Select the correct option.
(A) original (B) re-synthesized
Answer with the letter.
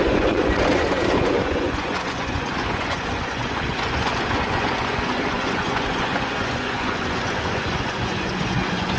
B